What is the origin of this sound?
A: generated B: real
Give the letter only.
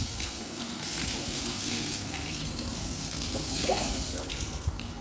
A